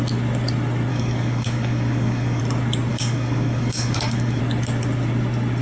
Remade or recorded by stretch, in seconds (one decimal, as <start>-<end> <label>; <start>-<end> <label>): 0.0-0.9 recorded; 0.9-2.4 remade; 2.4-2.9 recorded; 2.9-4.4 remade; 4.4-5.6 recorded